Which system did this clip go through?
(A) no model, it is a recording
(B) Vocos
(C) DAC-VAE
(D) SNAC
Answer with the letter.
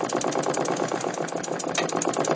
A